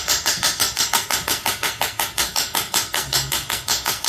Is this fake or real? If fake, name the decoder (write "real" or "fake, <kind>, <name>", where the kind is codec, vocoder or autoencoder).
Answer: fake, codec, SNAC